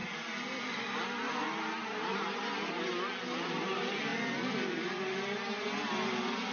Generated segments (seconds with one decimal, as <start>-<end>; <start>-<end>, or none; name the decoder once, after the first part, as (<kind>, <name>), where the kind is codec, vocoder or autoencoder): none